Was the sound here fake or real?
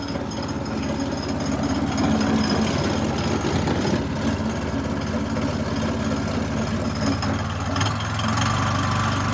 real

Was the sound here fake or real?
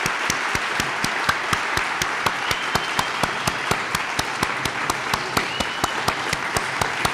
real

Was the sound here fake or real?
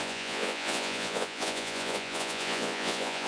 fake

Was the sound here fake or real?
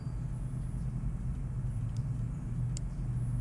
real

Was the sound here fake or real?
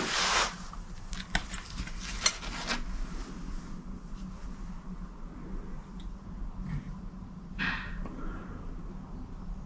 real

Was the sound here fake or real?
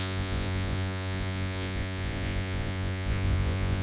fake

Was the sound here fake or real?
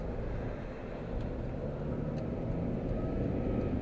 real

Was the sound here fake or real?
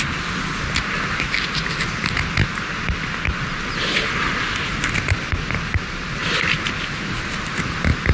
real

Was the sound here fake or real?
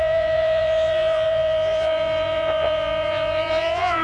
fake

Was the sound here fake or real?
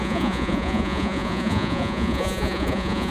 fake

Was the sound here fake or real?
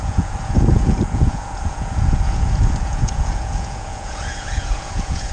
fake